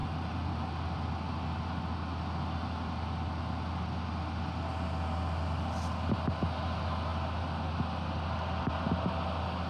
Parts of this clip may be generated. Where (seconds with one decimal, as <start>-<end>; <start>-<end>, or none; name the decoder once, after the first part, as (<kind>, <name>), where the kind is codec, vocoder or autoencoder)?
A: 0.0-0.5 (vocoder, BigVGAN v2)